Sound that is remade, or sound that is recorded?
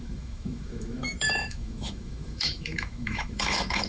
remade